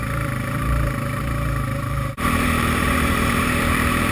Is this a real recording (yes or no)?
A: no